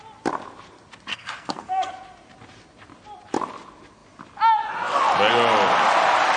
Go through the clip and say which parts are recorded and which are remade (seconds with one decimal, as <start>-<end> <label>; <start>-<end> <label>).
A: 0.0-1.1 recorded; 1.1-1.9 remade; 1.9-6.4 recorded